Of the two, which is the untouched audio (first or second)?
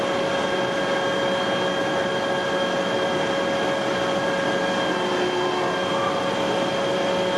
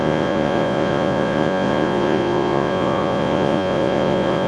first